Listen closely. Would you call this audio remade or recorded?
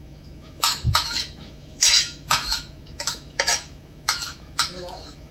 remade